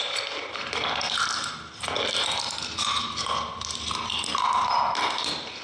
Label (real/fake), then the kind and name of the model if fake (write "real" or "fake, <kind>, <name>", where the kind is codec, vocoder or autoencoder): real